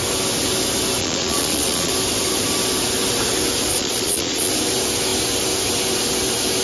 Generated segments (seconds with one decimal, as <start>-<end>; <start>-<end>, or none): 1.0-1.9; 3.7-4.5